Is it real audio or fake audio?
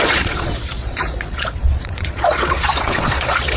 fake